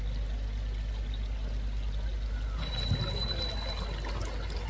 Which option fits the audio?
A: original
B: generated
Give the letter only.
A